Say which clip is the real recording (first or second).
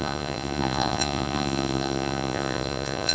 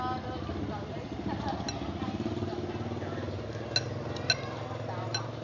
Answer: second